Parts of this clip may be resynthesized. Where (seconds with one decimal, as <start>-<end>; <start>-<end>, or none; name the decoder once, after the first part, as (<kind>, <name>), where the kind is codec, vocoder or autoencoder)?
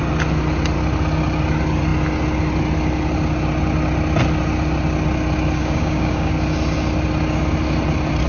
5.6-6.3 (codec, DAC)